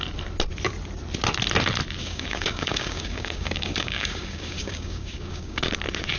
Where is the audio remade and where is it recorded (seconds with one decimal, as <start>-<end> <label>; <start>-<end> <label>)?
0.0-2.0 recorded; 2.0-5.7 remade; 5.7-6.2 recorded

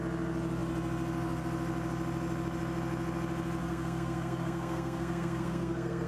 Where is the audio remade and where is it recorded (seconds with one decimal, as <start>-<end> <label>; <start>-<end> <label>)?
0.0-3.6 recorded; 3.6-6.1 remade

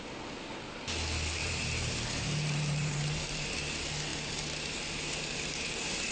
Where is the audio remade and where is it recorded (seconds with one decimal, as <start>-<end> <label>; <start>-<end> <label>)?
0.0-1.4 recorded; 1.4-3.5 remade; 3.5-6.1 recorded

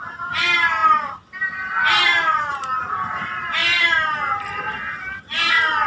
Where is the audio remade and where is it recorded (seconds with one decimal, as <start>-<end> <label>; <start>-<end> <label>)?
0.0-5.9 recorded

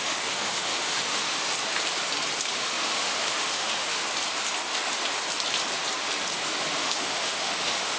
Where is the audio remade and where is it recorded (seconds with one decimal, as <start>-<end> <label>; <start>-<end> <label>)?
0.0-1.4 remade; 1.4-2.5 recorded; 2.5-4.0 remade; 4.0-6.8 recorded; 6.8-8.0 remade